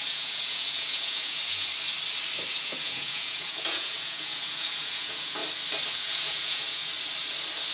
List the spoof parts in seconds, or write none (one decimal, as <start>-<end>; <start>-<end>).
0.0-1.7; 2.5-5.4; 5.9-6.8